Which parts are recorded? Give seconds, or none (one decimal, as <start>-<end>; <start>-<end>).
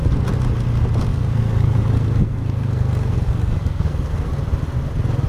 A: 0.0-1.1; 4.3-5.3